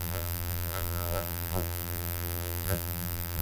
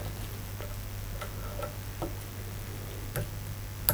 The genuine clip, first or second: second